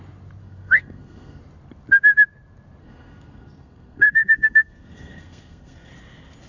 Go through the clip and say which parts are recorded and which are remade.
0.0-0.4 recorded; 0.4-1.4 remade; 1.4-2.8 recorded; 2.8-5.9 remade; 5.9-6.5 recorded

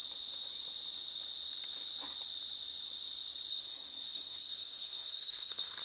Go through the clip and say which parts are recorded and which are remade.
0.0-3.5 recorded; 3.5-5.8 remade

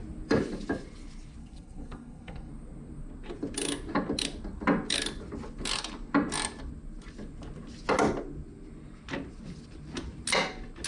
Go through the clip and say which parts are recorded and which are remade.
0.0-1.4 recorded; 1.4-2.5 remade; 2.5-10.9 recorded

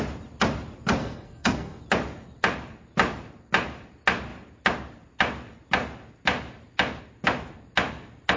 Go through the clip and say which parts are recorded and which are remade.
0.0-1.0 recorded; 1.0-1.8 remade; 1.8-8.4 recorded

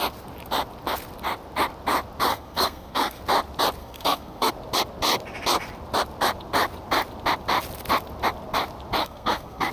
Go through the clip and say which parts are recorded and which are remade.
0.0-2.3 recorded; 2.3-3.2 remade; 3.2-3.8 recorded; 3.8-4.5 remade; 4.5-9.0 recorded; 9.0-9.7 remade

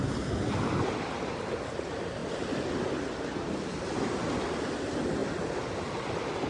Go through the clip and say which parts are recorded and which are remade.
0.0-6.5 recorded

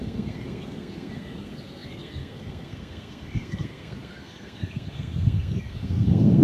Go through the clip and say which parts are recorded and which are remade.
0.0-6.4 remade

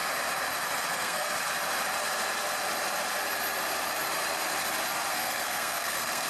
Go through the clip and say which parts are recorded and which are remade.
0.0-0.9 recorded; 0.9-1.3 remade; 1.3-5.1 recorded; 5.1-6.3 remade